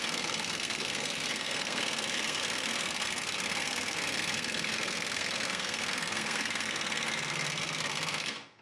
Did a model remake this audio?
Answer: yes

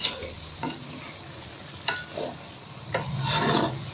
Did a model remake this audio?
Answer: no